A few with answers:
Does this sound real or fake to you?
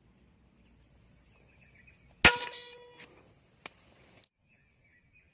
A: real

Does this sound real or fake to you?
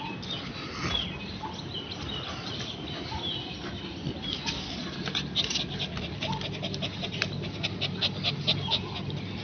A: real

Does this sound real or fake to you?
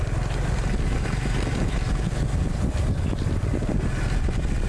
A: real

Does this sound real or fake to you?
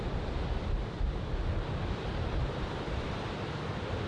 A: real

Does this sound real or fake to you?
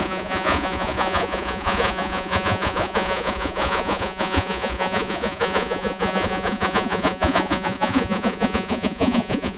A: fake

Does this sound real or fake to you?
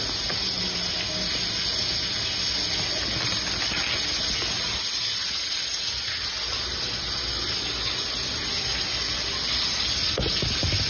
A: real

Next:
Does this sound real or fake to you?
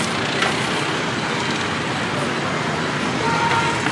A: real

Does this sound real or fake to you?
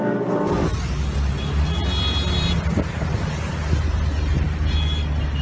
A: real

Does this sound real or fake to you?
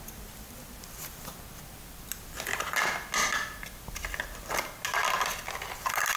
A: real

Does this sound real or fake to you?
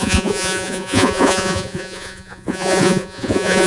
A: fake